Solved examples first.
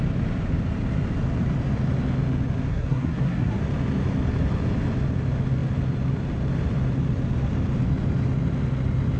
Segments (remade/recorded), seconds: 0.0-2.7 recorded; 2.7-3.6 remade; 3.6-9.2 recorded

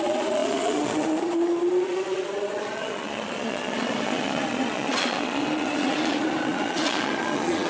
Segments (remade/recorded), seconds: 0.0-7.7 remade

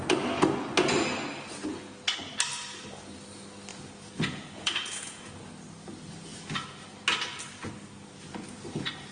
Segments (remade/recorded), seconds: 0.0-3.7 recorded; 3.7-5.3 remade; 5.3-9.1 recorded

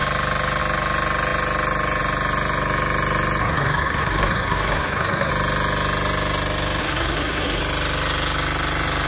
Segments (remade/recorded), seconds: 0.0-3.4 recorded; 3.4-5.3 remade; 5.3-6.8 recorded; 6.8-7.6 remade; 7.6-9.1 recorded

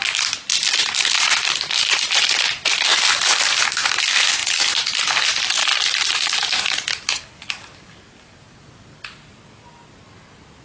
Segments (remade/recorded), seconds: 0.0-10.6 recorded

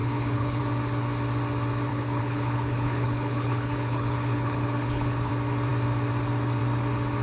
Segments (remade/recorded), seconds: 0.0-0.6 remade; 0.6-1.9 recorded; 1.9-5.3 remade; 5.3-7.2 recorded